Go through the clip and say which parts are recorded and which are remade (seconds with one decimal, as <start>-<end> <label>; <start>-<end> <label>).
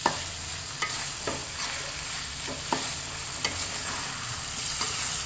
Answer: 0.0-5.3 recorded